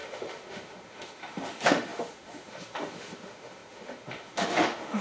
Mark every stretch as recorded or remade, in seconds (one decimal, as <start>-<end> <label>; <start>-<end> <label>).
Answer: 0.0-5.0 remade